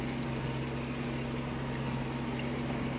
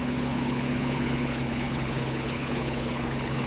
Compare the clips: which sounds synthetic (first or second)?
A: second